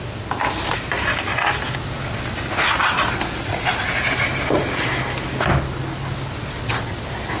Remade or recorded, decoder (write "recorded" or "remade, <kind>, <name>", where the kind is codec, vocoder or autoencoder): recorded